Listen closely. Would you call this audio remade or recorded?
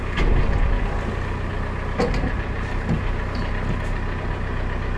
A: recorded